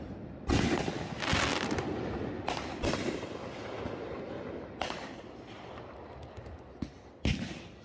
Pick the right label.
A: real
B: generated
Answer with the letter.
A